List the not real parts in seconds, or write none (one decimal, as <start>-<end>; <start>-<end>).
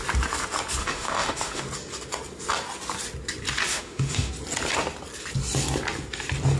0.8-1.6; 3.7-4.3